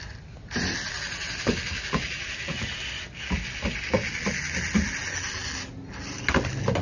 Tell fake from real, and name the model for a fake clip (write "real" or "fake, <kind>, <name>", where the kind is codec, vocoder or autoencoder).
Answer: real